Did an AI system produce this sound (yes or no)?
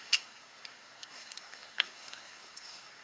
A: yes